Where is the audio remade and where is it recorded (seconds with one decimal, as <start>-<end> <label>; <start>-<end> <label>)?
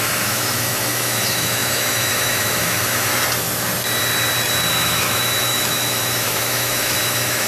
0.0-3.1 remade; 3.1-4.7 recorded; 4.7-7.5 remade